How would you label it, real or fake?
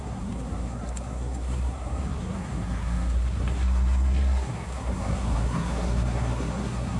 fake